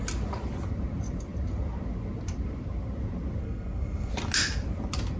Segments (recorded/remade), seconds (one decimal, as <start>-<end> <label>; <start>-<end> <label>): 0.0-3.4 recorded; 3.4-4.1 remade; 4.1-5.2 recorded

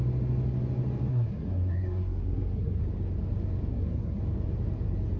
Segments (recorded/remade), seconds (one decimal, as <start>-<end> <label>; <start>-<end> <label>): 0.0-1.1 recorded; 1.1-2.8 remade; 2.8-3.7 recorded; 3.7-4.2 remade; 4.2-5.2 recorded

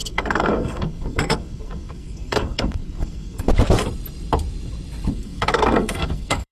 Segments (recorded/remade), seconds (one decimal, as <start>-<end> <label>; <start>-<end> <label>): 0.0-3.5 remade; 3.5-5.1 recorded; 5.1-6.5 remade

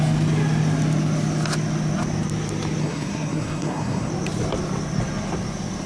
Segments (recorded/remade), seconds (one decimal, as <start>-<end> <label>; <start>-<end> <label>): 0.0-2.8 recorded; 2.8-4.1 remade; 4.1-5.9 recorded